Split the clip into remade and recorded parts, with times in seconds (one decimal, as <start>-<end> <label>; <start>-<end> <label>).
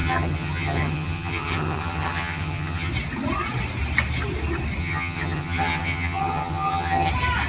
0.0-2.9 remade; 2.9-4.8 recorded; 4.8-7.1 remade; 7.1-7.5 recorded